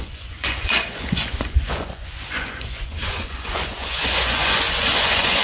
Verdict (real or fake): fake